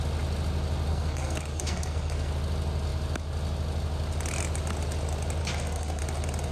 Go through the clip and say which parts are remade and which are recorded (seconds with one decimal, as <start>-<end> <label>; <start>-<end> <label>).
0.0-0.9 recorded; 0.9-2.3 remade; 2.3-5.4 recorded; 5.4-6.0 remade; 6.0-6.5 recorded